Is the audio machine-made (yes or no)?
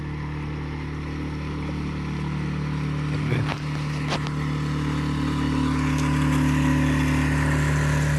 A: no